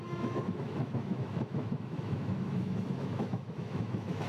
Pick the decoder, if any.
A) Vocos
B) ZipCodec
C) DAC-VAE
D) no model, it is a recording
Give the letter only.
C